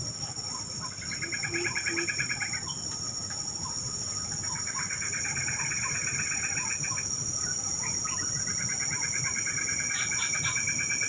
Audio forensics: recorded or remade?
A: recorded